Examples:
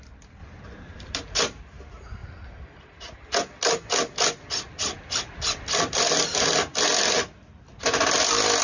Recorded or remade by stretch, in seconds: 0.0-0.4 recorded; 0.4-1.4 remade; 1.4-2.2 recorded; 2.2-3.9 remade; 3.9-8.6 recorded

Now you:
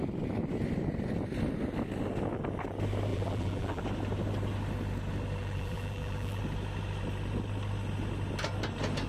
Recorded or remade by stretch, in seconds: 0.0-3.1 recorded; 3.1-3.8 remade; 3.8-5.4 recorded; 5.4-6.4 remade; 6.4-9.1 recorded

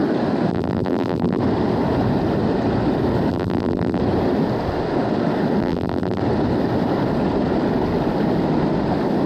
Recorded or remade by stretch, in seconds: 0.0-0.5 recorded; 0.5-1.4 remade; 1.4-3.3 recorded; 3.3-4.0 remade; 4.0-5.6 recorded; 5.6-6.2 remade; 6.2-9.3 recorded

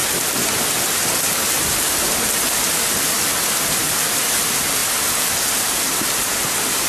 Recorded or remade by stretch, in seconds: 0.0-6.9 remade

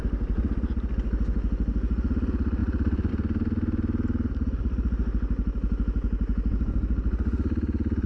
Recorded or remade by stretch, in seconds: 0.0-2.6 recorded; 2.6-3.1 remade; 3.1-8.1 recorded

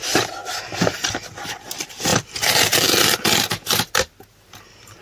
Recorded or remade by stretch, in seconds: 0.0-0.4 recorded; 0.4-1.1 remade; 1.1-2.1 recorded; 2.1-3.5 remade; 3.5-5.0 recorded

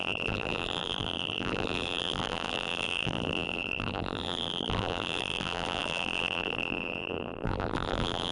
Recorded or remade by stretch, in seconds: 0.0-8.3 remade

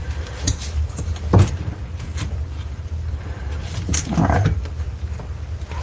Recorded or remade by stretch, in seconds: 0.0-1.1 remade; 1.1-2.1 recorded; 2.1-4.7 remade; 4.7-5.8 recorded